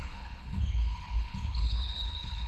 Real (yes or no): no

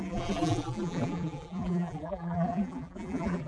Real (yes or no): no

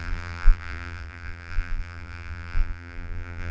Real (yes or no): no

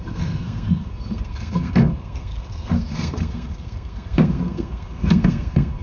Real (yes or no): no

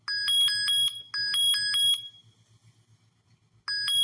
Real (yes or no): yes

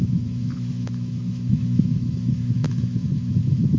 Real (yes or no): no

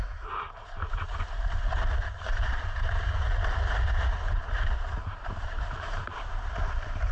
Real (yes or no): no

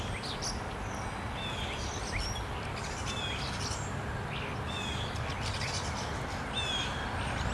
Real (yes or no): yes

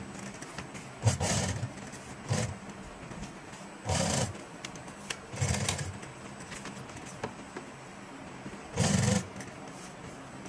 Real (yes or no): yes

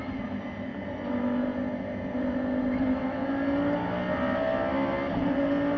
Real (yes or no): yes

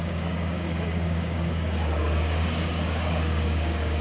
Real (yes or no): no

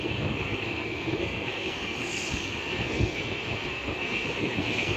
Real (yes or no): no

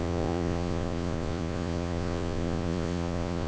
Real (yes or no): no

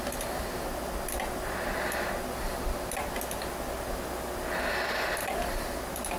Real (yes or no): yes